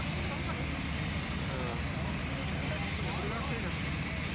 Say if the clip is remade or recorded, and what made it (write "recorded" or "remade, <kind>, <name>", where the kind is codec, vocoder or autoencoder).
recorded